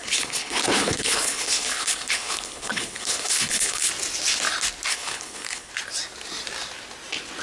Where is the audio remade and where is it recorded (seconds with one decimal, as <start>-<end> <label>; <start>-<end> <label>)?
0.0-3.9 remade; 3.9-4.9 recorded; 4.9-5.7 remade; 5.7-7.4 recorded